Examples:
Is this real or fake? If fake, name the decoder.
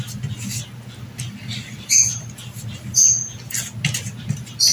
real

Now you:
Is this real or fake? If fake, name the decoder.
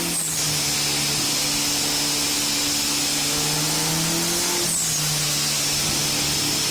real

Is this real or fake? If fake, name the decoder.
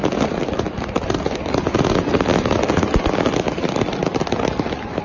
real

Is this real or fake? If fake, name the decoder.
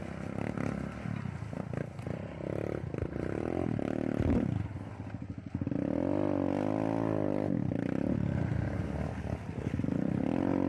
real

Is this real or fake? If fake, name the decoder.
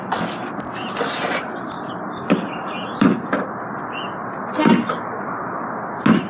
real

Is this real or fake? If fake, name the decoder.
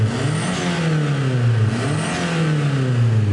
real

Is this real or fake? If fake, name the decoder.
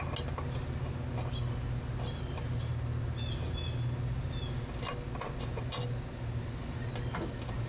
real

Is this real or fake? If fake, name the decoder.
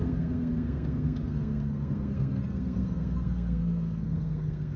fake, codec, SNAC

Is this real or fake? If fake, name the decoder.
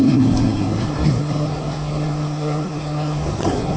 fake, codec, SNAC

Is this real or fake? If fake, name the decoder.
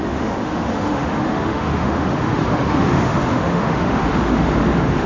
fake, autoencoder, DAC-VAE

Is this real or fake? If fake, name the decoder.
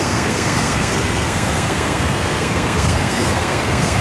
fake, codec, SNAC